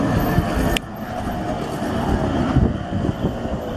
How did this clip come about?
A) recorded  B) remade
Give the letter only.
A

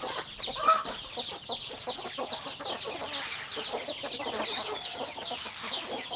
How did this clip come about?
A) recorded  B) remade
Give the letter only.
A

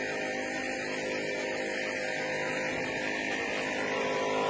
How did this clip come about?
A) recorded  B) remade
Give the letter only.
A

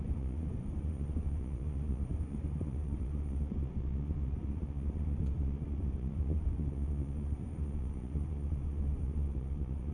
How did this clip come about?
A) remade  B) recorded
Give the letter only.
A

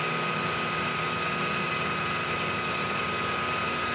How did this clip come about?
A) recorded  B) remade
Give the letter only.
A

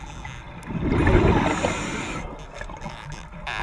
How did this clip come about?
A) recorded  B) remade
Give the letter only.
A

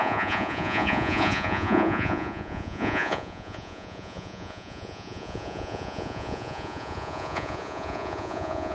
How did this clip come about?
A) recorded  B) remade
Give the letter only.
B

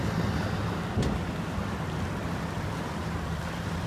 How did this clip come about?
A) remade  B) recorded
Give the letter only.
B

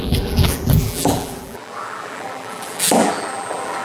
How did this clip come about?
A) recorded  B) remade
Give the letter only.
B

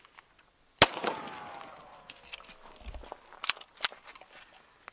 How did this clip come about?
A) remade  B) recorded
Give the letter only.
B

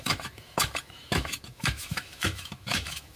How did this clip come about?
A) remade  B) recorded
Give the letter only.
A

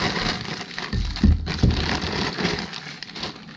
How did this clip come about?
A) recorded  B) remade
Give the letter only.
A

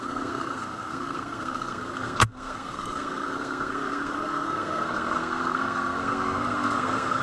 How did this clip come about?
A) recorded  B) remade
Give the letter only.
B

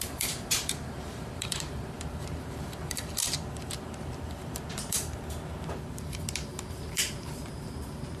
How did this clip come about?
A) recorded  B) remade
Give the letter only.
B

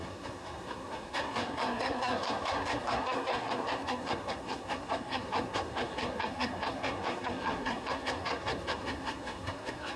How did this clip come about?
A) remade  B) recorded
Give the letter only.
A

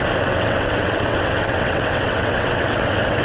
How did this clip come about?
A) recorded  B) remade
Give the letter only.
B